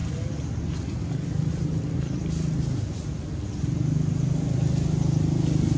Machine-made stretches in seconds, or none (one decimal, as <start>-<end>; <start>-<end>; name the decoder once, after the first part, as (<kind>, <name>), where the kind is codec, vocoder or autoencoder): none